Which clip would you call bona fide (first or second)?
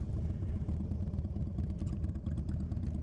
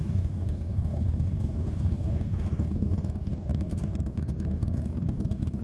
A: first